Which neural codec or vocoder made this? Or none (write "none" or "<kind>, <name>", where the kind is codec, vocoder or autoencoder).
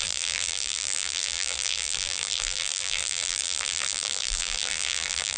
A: vocoder, BigVGAN v2